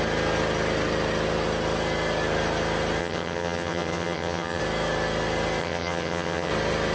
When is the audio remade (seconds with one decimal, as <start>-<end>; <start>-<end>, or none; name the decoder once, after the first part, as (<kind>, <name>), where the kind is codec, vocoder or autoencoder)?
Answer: 3.0-4.6 (vocoder, HiFi-GAN); 5.6-6.5